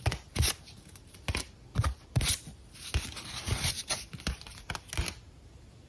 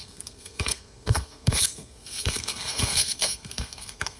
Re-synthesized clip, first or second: second